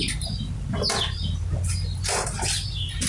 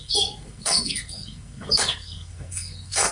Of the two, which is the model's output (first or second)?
second